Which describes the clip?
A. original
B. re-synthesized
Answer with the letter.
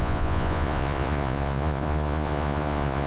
B